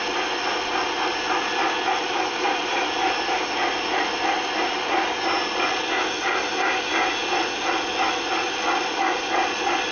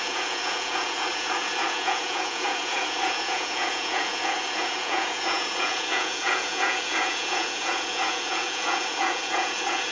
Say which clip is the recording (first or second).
first